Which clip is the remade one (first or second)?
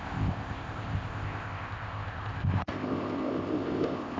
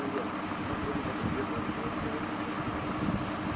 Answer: first